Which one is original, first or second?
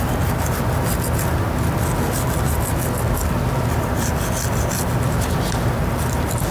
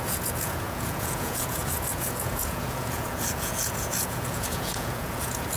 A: first